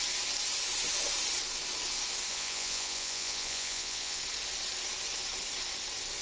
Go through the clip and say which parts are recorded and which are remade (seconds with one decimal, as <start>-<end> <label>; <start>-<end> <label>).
0.0-2.3 recorded; 2.3-4.2 remade; 4.2-6.2 recorded